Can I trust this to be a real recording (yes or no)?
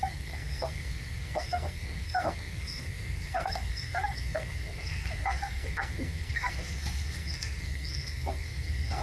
no